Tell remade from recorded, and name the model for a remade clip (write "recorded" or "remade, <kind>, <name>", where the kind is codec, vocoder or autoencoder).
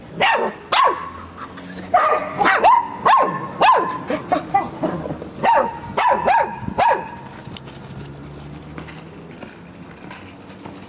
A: recorded